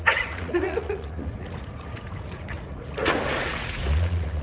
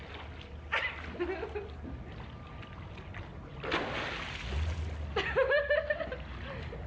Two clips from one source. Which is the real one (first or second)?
second